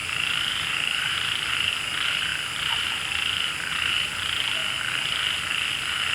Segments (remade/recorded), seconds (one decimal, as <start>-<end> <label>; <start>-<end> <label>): 0.0-1.7 remade; 1.7-2.3 recorded; 2.3-3.7 remade; 3.7-6.1 recorded